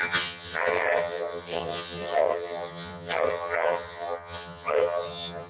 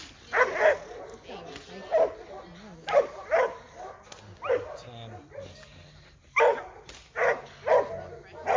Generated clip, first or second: first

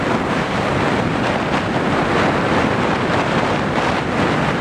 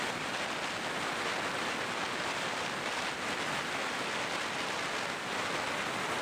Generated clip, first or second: first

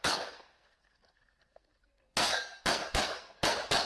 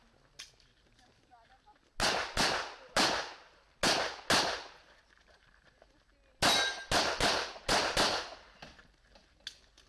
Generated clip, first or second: first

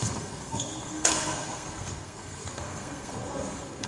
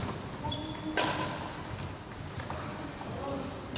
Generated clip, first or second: first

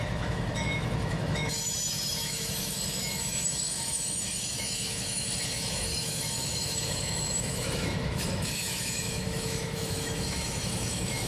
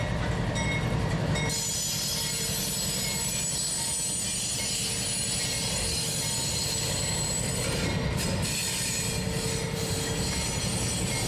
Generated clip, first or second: first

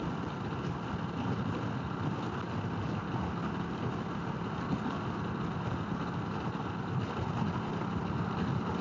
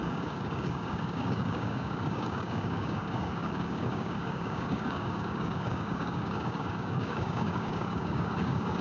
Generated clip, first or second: second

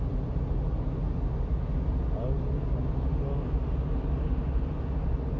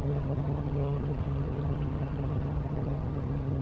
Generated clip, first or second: second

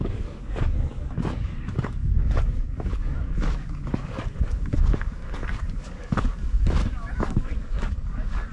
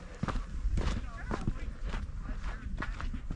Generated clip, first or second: first